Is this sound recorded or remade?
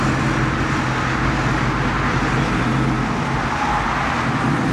recorded